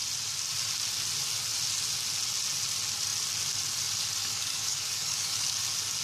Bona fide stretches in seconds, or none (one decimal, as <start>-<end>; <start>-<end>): 0.0-4.2; 5.5-6.0